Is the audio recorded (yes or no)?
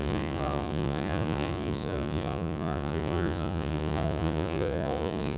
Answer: no